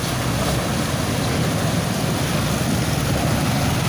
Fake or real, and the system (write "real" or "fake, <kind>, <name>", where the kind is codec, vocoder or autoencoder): real